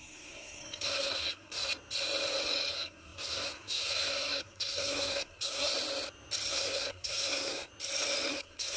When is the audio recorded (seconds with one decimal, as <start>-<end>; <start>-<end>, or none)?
1.6-2.7; 5.7-6.5; 7.7-8.3